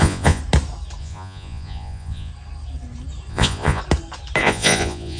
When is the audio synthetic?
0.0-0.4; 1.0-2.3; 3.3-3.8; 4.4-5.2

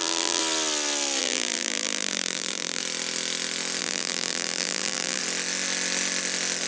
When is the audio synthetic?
0.0-0.4; 1.2-2.8; 3.8-5.2

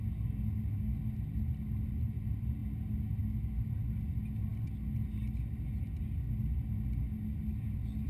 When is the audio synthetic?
none

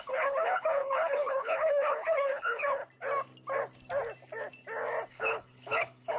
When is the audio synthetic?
0.0-2.8; 5.1-6.2

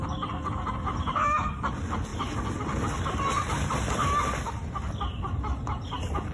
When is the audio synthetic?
none

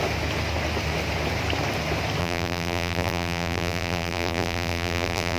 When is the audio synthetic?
2.2-5.4

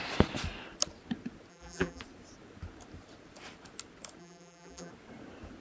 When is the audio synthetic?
1.5-2.0; 4.2-4.9

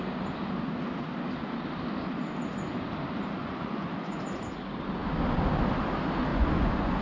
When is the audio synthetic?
3.4-4.2; 6.3-7.0